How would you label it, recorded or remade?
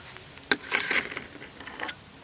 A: recorded